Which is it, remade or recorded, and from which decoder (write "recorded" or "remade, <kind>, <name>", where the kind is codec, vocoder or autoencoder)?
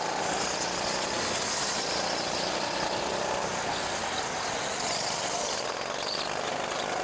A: recorded